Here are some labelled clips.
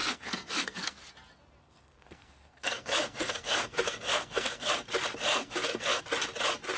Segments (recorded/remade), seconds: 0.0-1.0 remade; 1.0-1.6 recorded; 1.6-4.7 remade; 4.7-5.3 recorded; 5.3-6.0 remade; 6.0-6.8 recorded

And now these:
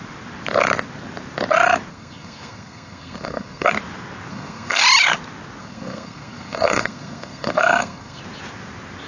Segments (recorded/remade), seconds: 0.0-1.9 recorded; 1.9-3.7 remade; 3.7-4.3 recorded; 4.3-4.8 remade; 4.8-5.6 recorded; 5.6-8.2 remade; 8.2-9.1 recorded

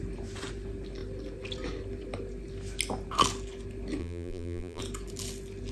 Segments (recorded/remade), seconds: 0.0-4.0 recorded; 4.0-4.8 remade; 4.8-5.7 recorded

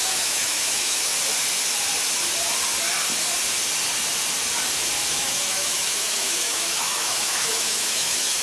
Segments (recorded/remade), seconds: 0.0-1.1 remade; 1.1-5.1 recorded; 5.1-8.4 remade